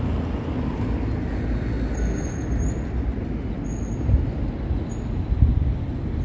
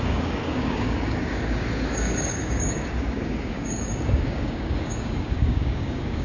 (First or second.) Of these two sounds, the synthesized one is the second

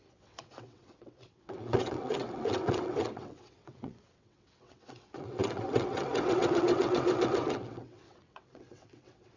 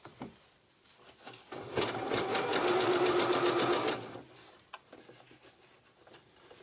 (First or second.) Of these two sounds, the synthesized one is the first